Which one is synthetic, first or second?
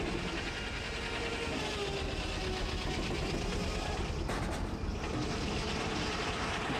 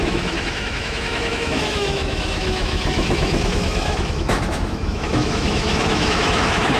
second